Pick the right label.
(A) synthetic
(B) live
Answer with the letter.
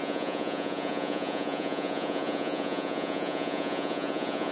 A